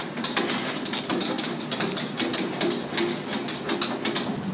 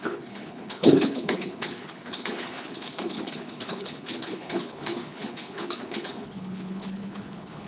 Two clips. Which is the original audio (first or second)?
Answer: first